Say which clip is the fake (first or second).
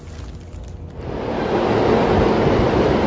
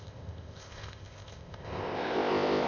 second